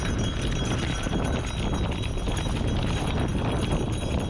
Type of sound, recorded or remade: recorded